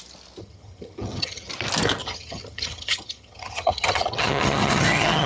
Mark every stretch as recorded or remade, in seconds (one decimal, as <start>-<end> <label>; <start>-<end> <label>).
0.0-0.4 recorded; 0.4-1.5 remade; 1.5-2.0 recorded; 2.0-5.3 remade